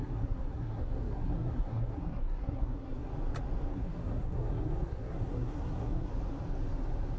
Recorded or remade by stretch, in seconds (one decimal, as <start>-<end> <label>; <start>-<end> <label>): 0.0-3.1 remade; 3.1-3.7 recorded; 3.7-6.1 remade; 6.1-7.2 recorded